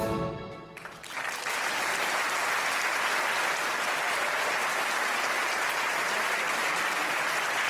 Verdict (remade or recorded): recorded